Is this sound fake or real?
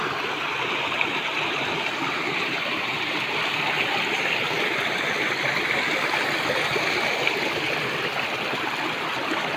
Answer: real